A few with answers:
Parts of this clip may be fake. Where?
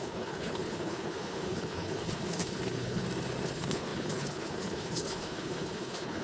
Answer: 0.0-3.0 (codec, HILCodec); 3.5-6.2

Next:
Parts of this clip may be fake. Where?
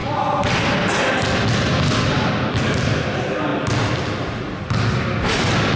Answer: none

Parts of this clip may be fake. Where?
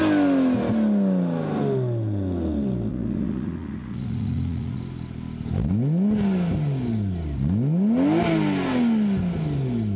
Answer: 2.9-4.8 (vocoder, Vocos)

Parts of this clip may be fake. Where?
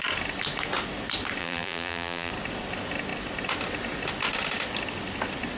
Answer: 1.4-2.3 (vocoder, BigVGAN v2)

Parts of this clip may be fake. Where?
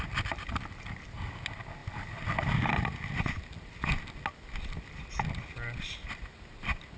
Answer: none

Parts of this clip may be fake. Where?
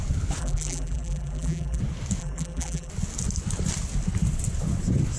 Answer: 0.4-1.8 (vocoder, BigVGAN v2); 2.2-2.9